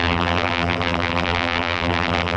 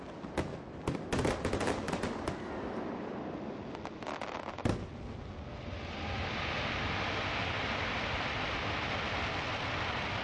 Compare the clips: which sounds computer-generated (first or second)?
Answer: first